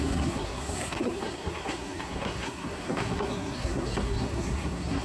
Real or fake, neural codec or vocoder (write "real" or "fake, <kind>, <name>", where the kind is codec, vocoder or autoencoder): fake, codec, SNAC